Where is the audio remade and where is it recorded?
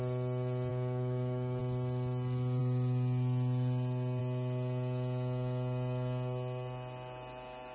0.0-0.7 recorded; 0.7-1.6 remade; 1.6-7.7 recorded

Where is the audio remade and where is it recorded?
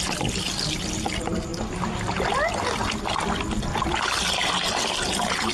0.0-5.5 recorded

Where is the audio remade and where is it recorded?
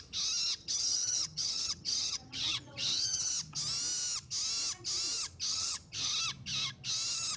0.0-0.6 recorded; 0.6-3.3 remade; 3.3-5.5 recorded; 5.5-6.1 remade; 6.1-7.4 recorded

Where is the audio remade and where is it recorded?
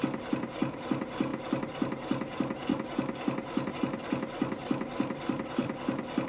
0.0-6.3 recorded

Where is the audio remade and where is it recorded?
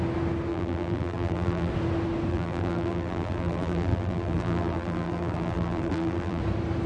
0.0-0.5 recorded; 0.5-1.7 remade; 1.7-2.3 recorded; 2.3-6.4 remade; 6.4-6.9 recorded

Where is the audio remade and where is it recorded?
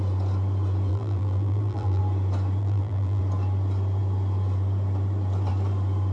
0.0-0.9 recorded; 0.9-2.0 remade; 2.0-2.6 recorded; 2.6-3.2 remade; 3.2-6.1 recorded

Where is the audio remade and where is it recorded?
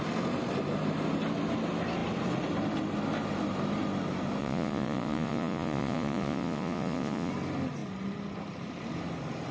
0.0-4.4 recorded; 4.4-7.3 remade; 7.3-9.5 recorded